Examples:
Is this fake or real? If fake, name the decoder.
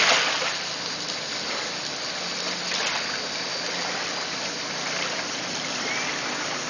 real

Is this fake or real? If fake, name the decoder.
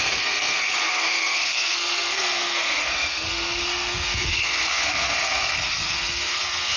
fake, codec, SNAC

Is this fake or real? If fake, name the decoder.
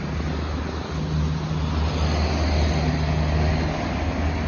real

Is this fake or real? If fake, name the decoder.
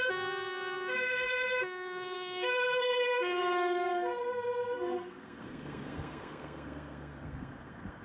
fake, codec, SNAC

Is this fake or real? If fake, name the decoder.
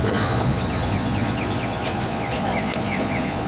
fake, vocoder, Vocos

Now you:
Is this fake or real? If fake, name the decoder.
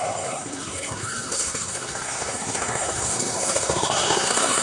fake, codec, SNAC